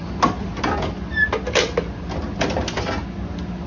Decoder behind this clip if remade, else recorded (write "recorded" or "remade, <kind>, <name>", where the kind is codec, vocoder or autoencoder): recorded